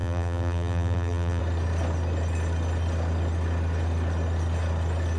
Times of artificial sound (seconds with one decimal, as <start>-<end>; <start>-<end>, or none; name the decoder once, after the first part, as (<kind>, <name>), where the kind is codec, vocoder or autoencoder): 0.0-1.4 (vocoder, BigVGAN v2)